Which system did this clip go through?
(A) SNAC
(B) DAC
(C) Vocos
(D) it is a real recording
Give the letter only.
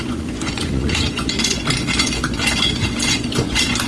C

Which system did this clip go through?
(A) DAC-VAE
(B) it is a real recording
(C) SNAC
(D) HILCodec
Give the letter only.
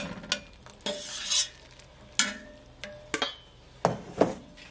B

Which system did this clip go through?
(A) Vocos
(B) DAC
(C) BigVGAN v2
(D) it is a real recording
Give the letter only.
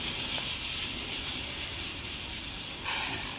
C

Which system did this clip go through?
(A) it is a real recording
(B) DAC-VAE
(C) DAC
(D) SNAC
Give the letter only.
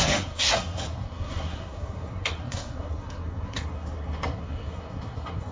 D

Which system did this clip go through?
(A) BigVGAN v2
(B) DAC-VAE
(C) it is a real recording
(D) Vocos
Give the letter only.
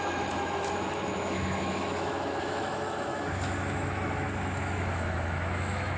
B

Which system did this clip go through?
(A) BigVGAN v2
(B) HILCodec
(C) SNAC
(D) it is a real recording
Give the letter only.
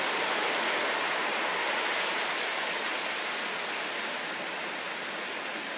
D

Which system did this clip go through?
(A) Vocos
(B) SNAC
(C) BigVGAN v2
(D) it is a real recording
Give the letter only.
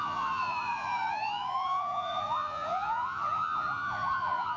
A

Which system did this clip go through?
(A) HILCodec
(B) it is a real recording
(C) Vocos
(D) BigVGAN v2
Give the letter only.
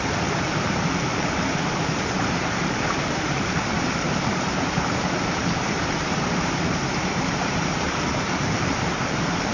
D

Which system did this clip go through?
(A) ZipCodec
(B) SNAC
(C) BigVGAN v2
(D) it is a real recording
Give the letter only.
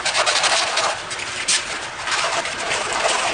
C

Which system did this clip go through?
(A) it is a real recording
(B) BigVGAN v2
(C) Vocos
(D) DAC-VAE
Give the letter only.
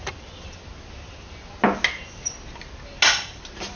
A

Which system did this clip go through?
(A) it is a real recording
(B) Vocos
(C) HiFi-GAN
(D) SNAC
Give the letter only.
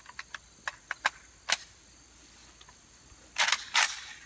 A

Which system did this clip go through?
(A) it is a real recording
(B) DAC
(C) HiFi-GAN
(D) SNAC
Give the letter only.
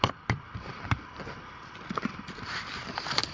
A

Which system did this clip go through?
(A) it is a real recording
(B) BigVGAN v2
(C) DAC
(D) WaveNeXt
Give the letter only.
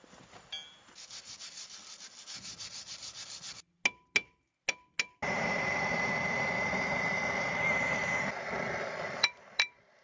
A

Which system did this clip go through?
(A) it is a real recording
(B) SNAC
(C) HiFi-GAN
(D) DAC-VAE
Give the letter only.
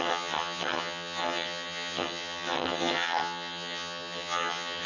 C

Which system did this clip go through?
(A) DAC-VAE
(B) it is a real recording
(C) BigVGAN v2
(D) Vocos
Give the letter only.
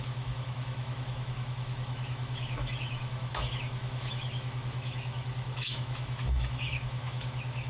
A